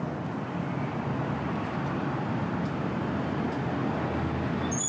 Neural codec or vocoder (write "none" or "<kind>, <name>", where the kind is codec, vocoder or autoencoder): none